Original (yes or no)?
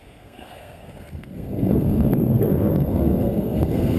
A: no